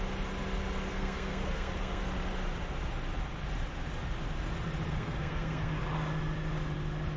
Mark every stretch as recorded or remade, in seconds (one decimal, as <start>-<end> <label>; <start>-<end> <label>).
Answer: 0.0-0.9 recorded; 0.9-2.0 remade; 2.0-4.9 recorded; 4.9-5.7 remade; 5.7-7.2 recorded